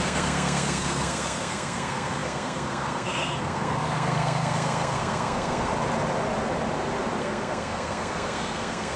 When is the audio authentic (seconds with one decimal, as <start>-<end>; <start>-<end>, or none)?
5.7-7.2